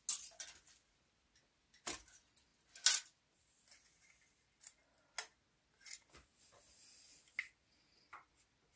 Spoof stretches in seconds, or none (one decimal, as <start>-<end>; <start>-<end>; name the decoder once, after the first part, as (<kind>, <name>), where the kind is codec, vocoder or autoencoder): none